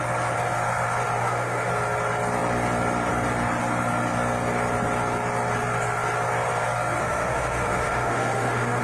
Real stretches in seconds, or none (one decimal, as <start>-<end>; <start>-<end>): 0.0-1.2; 1.7-7.0